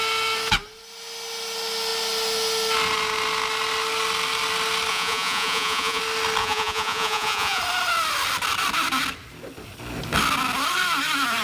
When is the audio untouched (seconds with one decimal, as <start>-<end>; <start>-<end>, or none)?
0.0-4.9; 6.0-6.4; 7.6-11.4